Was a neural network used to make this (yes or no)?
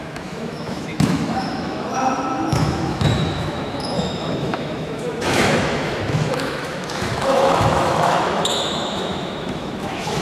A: yes